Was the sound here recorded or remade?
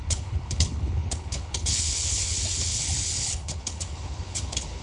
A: remade